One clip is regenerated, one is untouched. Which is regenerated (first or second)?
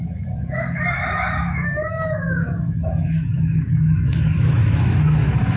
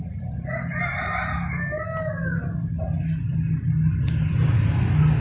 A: first